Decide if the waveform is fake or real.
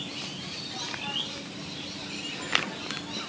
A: real